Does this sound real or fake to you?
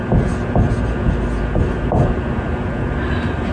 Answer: real